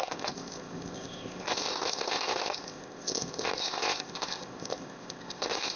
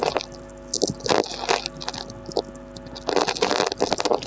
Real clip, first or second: second